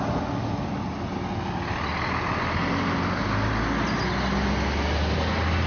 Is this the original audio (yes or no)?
yes